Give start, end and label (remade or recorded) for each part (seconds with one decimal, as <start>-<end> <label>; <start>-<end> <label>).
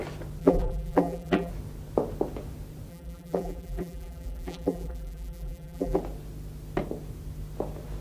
0.0-0.4 recorded; 0.4-1.5 remade; 1.5-2.9 recorded; 2.9-6.0 remade; 6.0-8.0 recorded